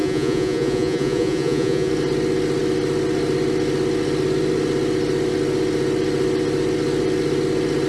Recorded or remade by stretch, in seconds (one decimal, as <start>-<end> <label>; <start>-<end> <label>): 0.0-1.9 remade; 1.9-7.9 recorded

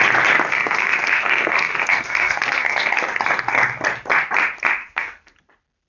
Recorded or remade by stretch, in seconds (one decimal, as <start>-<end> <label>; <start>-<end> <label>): 0.0-0.5 recorded; 0.5-2.9 remade; 2.9-4.8 recorded; 4.8-5.3 remade; 5.3-5.9 recorded